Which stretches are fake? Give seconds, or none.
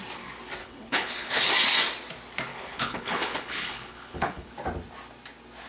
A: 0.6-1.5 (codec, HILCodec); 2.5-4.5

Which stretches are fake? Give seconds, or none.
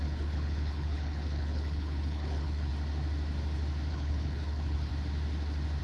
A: 0.0-2.7 (codec, HILCodec); 3.9-4.9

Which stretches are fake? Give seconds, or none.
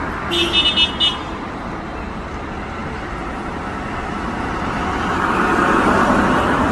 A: none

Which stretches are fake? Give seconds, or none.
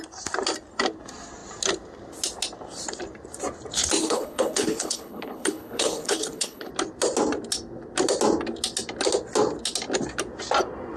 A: 4.0-6.7 (codec, HILCodec)